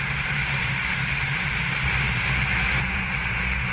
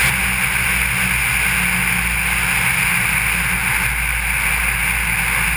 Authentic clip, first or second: second